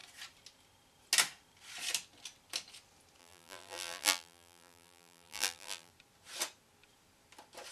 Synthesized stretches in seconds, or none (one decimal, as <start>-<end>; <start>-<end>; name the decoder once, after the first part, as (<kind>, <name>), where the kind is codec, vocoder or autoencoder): 3.2-5.9 (vocoder, BigVGAN v2)